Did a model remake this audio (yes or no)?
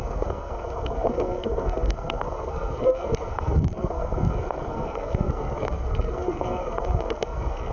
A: yes